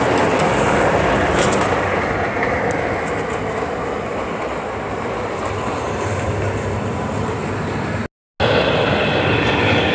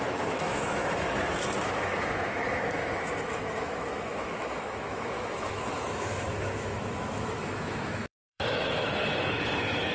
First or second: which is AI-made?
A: second